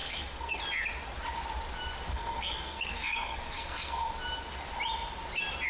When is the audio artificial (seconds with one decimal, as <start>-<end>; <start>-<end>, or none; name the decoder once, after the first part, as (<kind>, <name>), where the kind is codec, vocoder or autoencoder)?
0.0-0.6 (codec, SNAC); 2.1-4.1